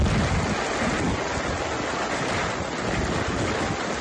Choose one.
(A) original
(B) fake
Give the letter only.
A